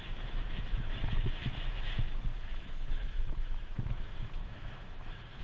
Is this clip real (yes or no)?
no